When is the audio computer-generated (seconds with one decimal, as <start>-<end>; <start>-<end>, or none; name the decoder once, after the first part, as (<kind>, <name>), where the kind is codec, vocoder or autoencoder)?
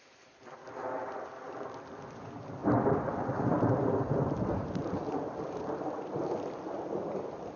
none